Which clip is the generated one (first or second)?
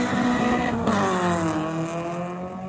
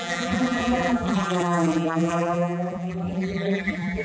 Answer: second